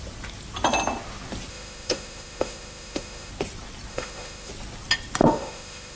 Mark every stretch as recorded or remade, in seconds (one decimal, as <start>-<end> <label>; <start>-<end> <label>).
0.0-1.5 recorded; 1.5-3.3 remade; 3.3-3.9 recorded; 3.9-4.5 remade; 4.5-5.2 recorded; 5.2-6.0 remade

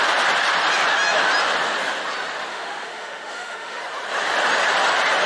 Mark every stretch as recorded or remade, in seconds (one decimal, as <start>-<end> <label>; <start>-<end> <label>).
0.0-2.5 recorded; 2.5-3.8 remade; 3.8-5.3 recorded

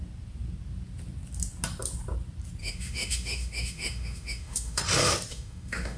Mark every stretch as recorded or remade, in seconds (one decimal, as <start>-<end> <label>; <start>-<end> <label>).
0.0-2.6 recorded; 2.6-4.8 remade; 4.8-5.3 recorded; 5.3-6.0 remade

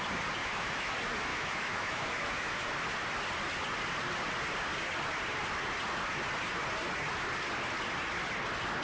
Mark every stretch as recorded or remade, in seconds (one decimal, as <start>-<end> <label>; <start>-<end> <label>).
0.0-0.4 recorded; 0.4-0.9 remade; 0.9-1.3 recorded; 1.3-2.7 remade; 2.7-8.8 recorded

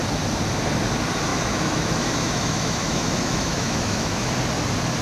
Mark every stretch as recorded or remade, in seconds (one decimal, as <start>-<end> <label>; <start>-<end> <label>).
0.0-1.3 recorded; 1.3-4.3 remade; 4.3-5.0 recorded